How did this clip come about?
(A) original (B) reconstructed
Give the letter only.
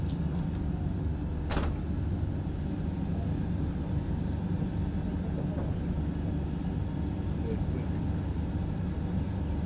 A